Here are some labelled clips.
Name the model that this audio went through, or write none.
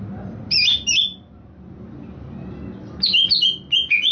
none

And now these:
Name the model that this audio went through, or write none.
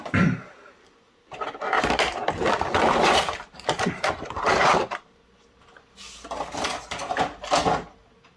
none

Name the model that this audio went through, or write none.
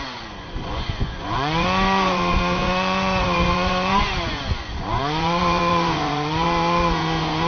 vocoder, Vocos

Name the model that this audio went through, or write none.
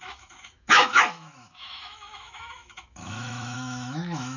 autoencoder, DAC-VAE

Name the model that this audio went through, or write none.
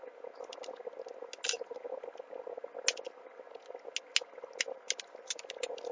none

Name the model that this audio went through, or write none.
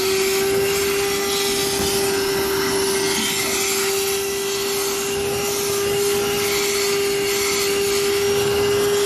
none